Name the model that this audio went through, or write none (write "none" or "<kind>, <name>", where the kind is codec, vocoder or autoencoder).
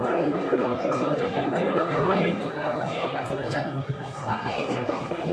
codec, SNAC